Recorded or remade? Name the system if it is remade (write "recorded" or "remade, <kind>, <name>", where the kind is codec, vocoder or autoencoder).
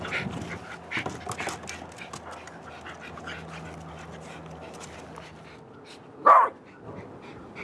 recorded